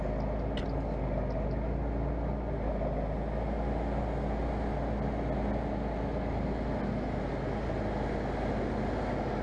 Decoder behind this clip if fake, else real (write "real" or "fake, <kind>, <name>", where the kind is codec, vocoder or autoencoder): real